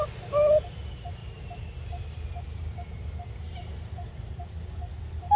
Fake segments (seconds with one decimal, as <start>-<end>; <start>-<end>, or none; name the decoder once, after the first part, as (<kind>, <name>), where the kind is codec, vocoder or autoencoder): none